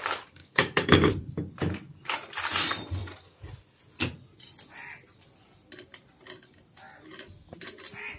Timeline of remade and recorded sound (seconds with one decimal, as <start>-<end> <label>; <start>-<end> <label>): 0.0-0.4 recorded; 0.4-1.1 remade; 1.1-8.2 recorded